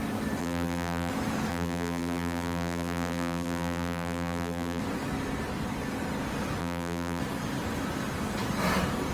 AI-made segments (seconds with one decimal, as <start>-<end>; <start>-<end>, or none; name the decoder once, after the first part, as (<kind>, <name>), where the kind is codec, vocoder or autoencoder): 0.4-1.1 (vocoder, BigVGAN v2); 1.5-4.8; 6.6-7.2

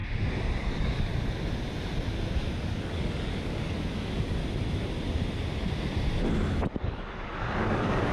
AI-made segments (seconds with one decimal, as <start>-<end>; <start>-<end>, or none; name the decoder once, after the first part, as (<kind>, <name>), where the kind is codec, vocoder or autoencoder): 0.6-1.1 (codec, DAC); 2.6-4.4; 6.8-8.1

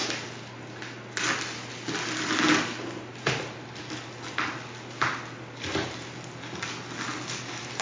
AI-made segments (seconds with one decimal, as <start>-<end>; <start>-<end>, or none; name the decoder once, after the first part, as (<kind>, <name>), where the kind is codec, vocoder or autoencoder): none

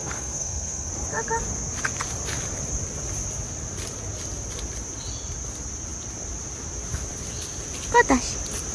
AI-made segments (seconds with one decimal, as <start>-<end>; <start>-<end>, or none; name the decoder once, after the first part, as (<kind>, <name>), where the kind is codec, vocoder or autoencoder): 0.0-0.9 (codec, SNAC)

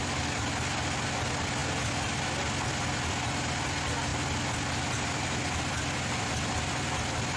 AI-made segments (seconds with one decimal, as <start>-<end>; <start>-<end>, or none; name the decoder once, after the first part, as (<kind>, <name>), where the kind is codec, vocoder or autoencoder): none

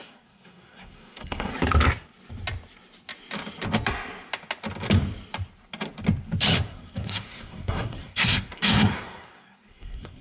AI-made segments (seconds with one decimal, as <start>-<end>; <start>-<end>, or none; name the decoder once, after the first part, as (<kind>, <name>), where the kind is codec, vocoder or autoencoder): 0.0-1.5 (codec, SNAC); 6.7-10.2

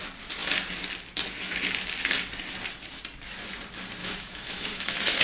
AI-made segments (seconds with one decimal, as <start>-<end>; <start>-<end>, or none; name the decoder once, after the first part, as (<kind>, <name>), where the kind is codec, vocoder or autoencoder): 4.0-5.2 (autoencoder, DAC-VAE)

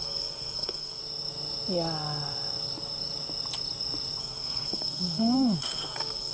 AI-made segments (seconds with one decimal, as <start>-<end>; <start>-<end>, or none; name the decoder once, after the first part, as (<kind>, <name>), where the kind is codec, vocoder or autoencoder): 0.0-1.0 (codec, SNAC); 4.2-6.3